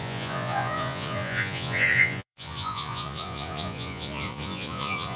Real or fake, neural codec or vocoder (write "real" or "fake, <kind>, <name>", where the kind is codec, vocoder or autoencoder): fake, vocoder, Vocos